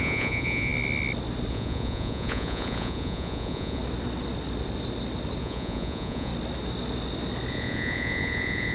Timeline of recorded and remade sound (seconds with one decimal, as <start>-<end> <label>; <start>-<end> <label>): 0.0-0.7 remade; 0.7-1.5 recorded; 1.5-3.8 remade; 3.8-5.4 recorded; 5.4-6.3 remade; 6.3-7.5 recorded; 7.5-8.7 remade